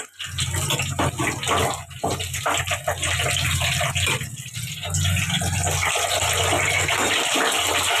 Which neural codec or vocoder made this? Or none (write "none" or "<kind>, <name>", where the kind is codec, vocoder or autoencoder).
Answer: none